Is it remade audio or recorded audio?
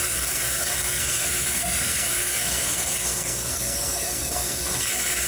remade